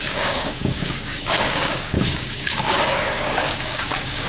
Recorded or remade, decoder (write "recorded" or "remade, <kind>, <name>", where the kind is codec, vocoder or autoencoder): remade, codec, DAC